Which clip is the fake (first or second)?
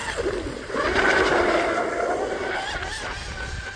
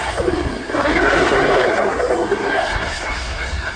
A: second